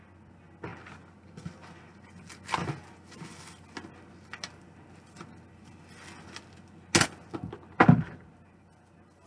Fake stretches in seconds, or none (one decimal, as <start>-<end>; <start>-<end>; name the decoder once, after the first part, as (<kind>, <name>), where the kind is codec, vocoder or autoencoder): none